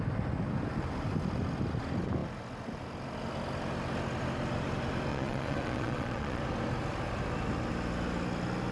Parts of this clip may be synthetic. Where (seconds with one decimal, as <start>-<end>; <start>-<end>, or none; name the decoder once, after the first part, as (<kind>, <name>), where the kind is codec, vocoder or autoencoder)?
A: 5.1-6.4 (vocoder, Vocos)